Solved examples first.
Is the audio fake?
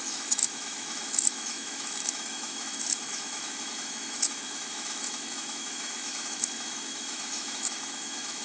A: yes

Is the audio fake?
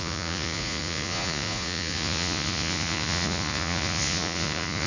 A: yes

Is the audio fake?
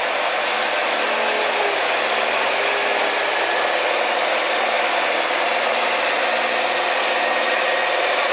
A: no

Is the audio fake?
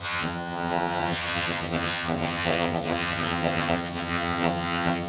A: yes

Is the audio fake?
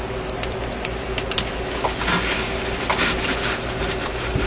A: no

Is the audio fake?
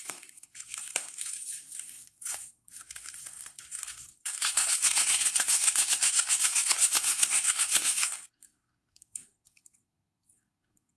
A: yes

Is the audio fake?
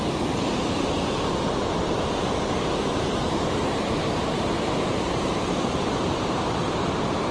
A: yes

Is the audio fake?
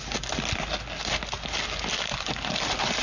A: no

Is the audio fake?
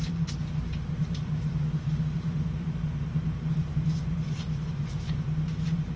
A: yes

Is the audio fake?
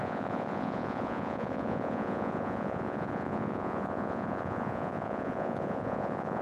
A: yes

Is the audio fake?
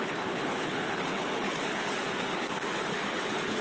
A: yes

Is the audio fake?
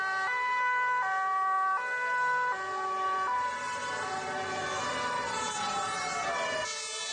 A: no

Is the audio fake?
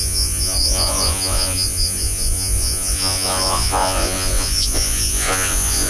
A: yes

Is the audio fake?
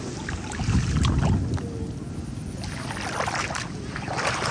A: no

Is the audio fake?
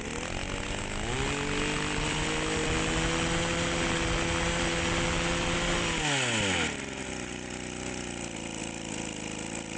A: no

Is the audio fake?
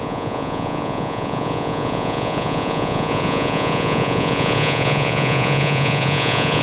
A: yes